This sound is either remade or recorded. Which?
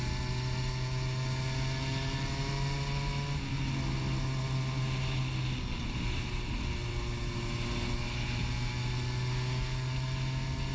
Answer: recorded